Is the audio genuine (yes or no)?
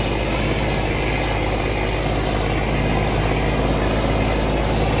yes